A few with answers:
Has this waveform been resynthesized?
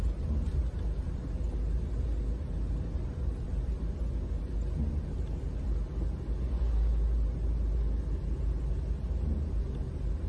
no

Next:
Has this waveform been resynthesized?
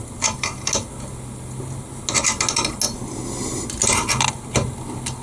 no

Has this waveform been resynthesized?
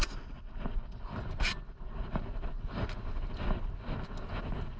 no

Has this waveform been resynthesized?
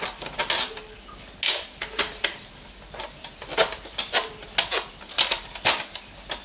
no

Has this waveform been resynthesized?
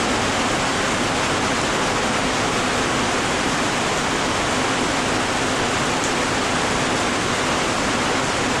no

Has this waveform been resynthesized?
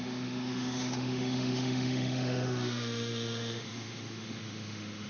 yes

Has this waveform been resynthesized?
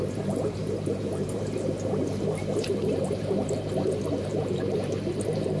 yes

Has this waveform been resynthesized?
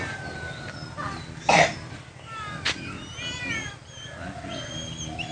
no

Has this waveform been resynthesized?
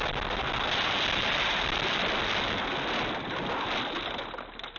no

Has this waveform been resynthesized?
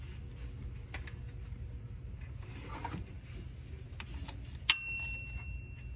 no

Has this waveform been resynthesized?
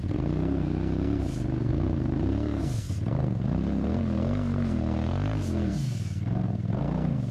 yes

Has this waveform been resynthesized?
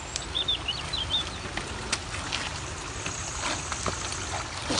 no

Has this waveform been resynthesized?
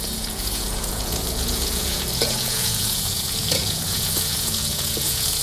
yes